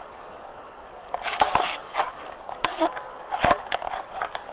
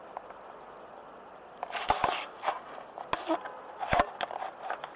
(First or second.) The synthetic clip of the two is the first